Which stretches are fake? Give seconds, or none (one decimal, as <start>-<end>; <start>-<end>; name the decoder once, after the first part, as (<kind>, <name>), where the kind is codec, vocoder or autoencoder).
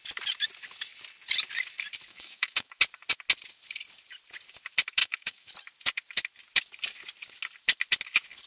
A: 2.1-2.8 (autoencoder, DAC-VAE); 5.0-5.5